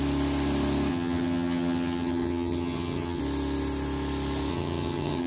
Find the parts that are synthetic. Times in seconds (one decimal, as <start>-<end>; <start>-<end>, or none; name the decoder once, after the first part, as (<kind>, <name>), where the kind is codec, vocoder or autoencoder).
0.9-3.2 (vocoder, HiFi-GAN); 4.5-5.3